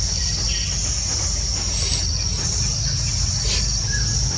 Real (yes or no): yes